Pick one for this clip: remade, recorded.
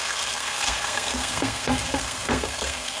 remade